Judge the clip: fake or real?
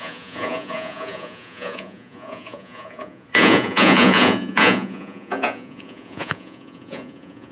fake